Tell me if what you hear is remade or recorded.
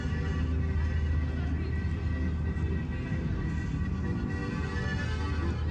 recorded